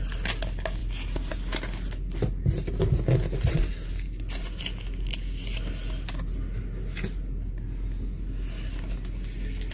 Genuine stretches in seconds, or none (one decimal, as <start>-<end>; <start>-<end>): 0.0-9.7